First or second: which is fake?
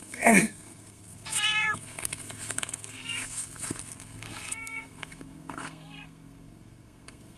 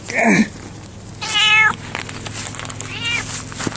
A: first